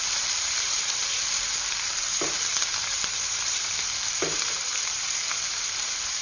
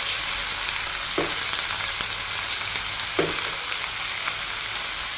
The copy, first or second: first